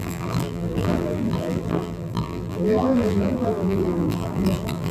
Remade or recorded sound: remade